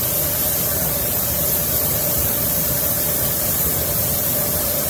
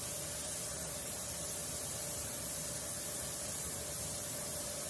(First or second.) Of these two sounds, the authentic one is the second